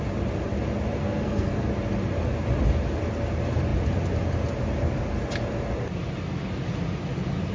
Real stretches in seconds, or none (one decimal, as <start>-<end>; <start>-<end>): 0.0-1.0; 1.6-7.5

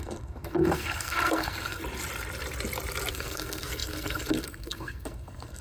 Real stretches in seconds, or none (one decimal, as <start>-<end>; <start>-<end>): 1.8-3.1

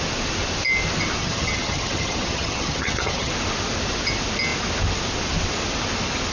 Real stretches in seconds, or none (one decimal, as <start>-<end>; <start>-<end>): 0.0-1.2; 3.3-6.3

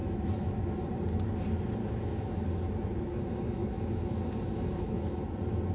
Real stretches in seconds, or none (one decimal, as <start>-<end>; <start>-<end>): 0.6-1.8; 5.2-5.7

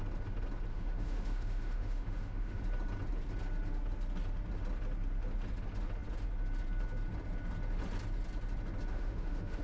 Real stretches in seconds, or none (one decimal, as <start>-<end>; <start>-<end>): 0.0-0.7; 2.6-8.9

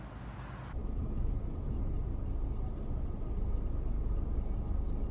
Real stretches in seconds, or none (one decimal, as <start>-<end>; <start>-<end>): 0.0-0.8; 1.3-5.1

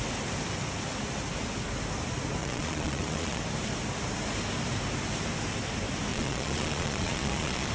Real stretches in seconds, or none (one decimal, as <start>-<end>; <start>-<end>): 0.0-2.4; 3.4-6.1